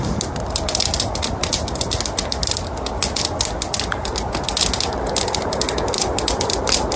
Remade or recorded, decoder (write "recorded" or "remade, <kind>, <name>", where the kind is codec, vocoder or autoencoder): recorded